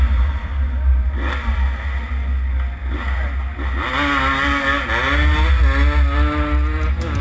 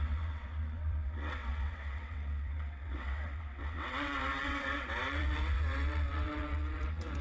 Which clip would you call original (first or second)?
first